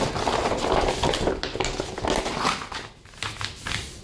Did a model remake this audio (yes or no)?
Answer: no